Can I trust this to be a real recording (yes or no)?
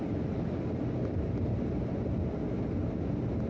yes